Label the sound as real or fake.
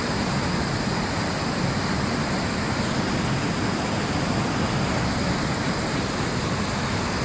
real